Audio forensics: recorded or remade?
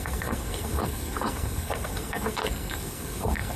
remade